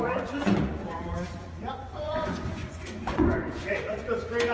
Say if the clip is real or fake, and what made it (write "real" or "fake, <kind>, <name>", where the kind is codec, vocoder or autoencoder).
fake, vocoder, Vocos